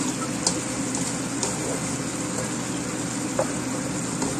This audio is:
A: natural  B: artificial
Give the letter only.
A